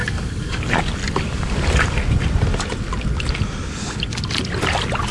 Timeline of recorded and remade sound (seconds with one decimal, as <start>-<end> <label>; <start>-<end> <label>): 0.0-0.6 remade; 0.6-5.1 recorded